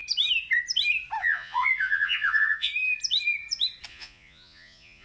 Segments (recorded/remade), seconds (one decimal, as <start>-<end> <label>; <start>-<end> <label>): 0.0-1.2 recorded; 1.2-2.7 remade; 2.7-3.9 recorded; 3.9-5.0 remade